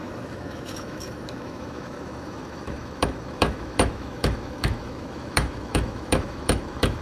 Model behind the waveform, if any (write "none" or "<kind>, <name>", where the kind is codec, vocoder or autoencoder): autoencoder, DAC-VAE